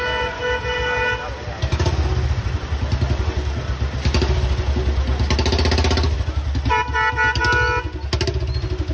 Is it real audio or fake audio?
real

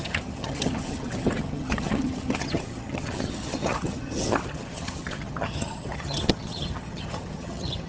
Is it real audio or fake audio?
fake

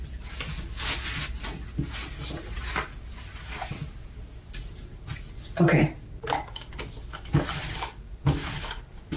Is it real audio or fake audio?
real